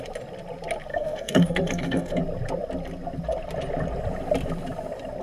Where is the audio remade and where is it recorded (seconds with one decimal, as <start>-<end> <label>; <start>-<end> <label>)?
0.0-0.9 recorded; 0.9-2.2 remade; 2.2-5.2 recorded